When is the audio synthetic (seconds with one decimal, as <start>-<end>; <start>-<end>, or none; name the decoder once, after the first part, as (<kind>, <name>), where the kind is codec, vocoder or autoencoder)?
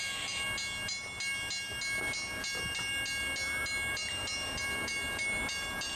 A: none